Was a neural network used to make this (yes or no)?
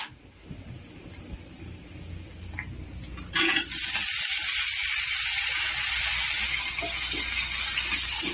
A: no